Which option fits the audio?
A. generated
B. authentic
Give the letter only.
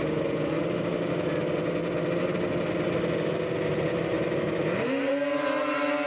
B